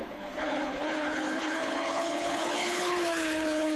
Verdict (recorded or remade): remade